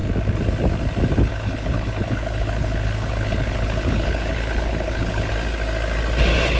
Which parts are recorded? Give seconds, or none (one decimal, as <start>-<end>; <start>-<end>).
0.0-1.3; 5.3-6.6